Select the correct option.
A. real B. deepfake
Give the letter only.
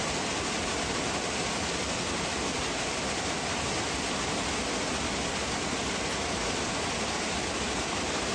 A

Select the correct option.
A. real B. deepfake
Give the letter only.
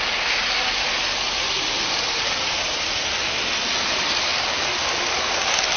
A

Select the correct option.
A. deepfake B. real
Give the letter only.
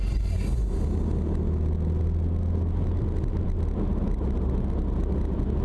B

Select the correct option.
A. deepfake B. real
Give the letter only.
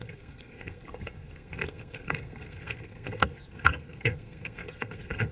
A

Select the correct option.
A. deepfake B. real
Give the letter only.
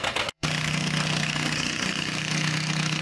A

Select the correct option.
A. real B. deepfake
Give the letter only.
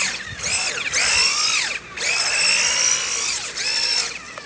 A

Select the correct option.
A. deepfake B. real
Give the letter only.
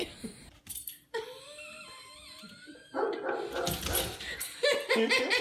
B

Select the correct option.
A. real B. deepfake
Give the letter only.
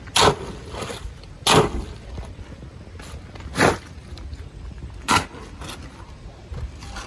A